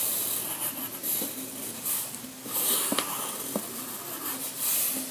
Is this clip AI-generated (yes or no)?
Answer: no